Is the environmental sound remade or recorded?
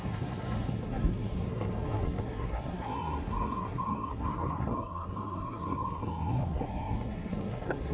remade